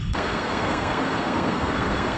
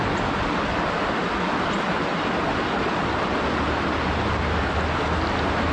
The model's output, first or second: first